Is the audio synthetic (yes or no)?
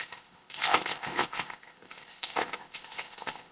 yes